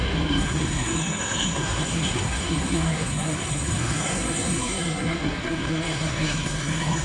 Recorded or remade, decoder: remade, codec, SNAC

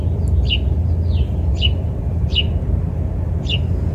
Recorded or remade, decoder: recorded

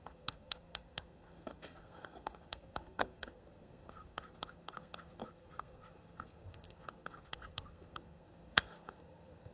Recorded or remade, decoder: remade, codec, SNAC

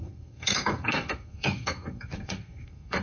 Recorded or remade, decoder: remade, codec, SNAC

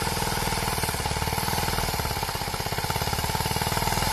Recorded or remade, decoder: recorded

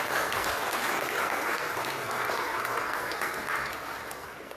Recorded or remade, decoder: remade, codec, SNAC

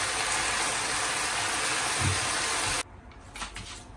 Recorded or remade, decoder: recorded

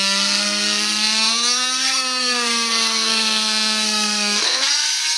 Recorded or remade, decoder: remade, codec, SNAC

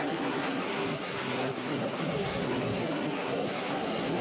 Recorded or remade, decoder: remade, codec, SNAC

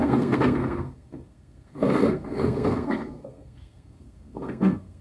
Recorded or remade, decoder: remade, codec, SNAC